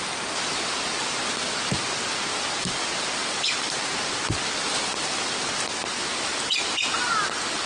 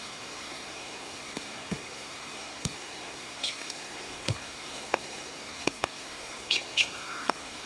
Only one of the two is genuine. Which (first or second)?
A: first